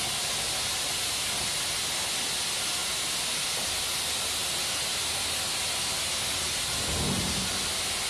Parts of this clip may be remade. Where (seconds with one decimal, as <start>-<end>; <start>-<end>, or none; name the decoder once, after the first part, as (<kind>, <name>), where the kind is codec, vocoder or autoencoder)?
none